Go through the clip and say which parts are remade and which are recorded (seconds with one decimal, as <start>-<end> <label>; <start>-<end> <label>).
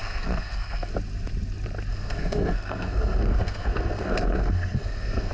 0.0-0.9 remade; 0.9-1.9 recorded; 1.9-5.3 remade